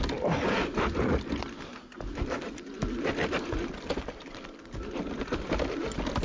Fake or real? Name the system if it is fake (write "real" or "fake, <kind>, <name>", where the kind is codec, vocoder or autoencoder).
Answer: real